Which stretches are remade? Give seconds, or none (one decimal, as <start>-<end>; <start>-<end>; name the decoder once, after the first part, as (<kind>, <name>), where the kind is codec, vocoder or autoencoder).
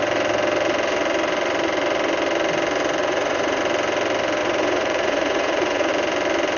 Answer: 3.0-3.6 (vocoder, Vocos); 4.4-5.9